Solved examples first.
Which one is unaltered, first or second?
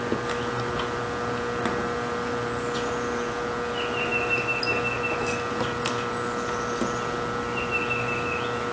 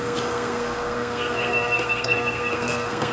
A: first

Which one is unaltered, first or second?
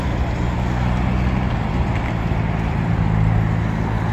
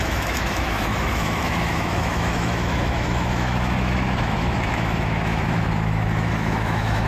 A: first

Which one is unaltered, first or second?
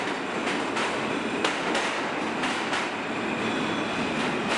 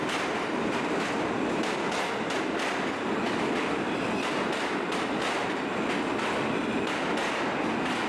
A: second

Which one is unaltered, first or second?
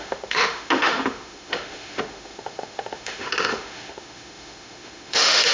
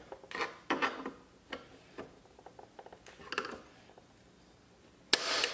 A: second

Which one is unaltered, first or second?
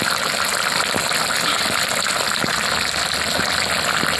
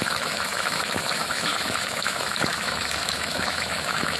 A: first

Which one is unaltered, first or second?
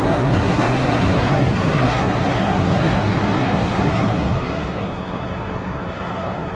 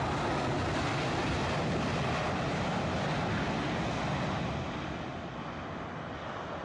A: second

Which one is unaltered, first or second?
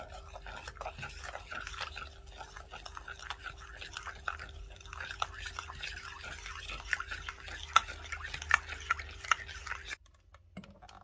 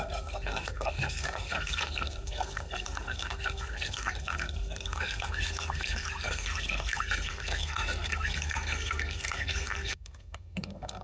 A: first